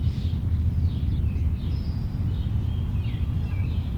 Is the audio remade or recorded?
recorded